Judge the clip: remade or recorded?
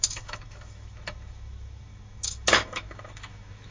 remade